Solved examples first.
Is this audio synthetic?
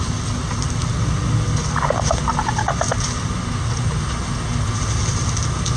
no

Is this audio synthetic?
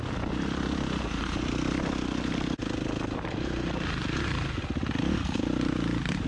no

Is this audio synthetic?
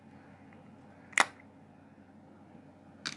no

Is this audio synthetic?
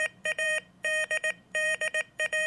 yes